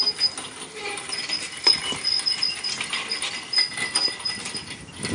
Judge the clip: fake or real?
real